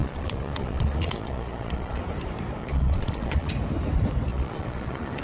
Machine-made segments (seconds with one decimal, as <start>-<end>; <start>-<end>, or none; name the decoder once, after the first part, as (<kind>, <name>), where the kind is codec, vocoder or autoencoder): 0.0-2.0 (vocoder, Vocos); 2.6-3.5; 4.3-5.2